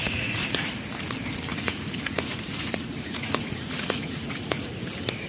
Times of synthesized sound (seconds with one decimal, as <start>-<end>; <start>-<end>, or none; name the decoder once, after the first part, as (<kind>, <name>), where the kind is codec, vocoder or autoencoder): 0.0-0.7 (vocoder, Vocos); 1.5-4.7